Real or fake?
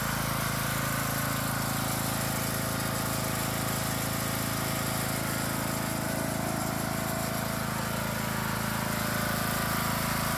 real